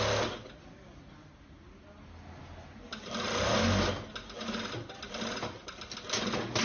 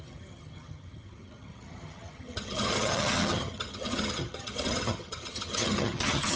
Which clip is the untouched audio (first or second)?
first